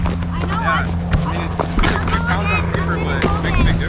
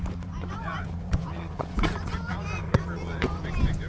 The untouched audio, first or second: first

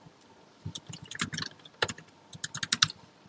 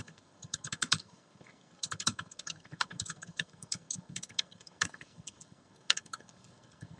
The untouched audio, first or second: first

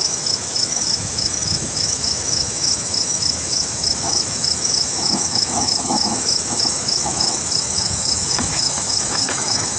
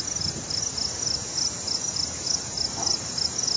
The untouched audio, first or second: second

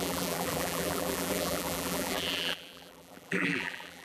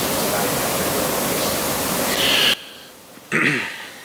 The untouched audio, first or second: second